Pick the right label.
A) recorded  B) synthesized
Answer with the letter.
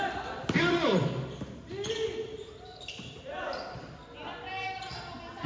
A